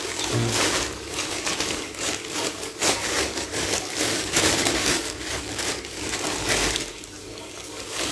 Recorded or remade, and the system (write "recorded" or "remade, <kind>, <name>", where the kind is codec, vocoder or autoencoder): remade, codec, DAC